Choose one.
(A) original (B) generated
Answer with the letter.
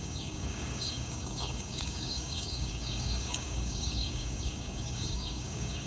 B